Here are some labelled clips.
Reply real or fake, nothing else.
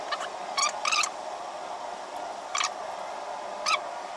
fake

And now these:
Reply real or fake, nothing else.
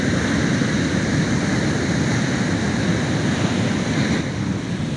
real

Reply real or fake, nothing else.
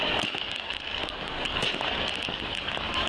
fake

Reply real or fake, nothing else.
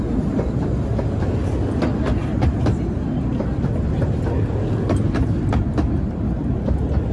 real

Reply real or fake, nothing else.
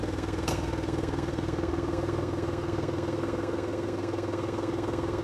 fake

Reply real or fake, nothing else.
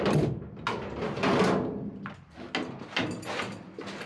real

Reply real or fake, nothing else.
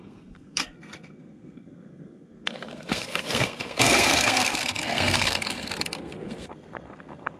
fake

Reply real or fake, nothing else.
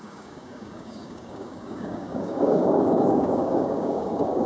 fake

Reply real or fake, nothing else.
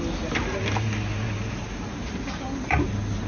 real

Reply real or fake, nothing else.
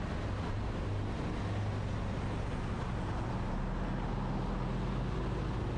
real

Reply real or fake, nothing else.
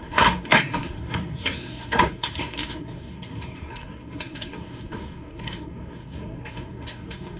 fake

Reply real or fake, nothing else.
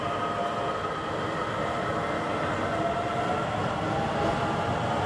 real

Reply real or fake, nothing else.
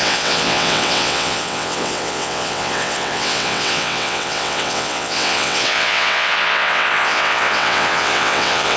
fake